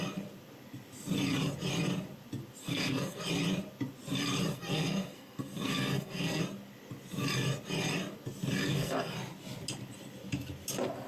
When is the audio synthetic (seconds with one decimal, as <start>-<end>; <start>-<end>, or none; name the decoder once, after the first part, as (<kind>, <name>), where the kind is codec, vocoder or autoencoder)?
2.6-3.2 (codec, SNAC); 4.5-6.4; 8.6-9.1